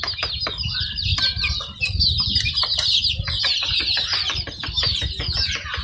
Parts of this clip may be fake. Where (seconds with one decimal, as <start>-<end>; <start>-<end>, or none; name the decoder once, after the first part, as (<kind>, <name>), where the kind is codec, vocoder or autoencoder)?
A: none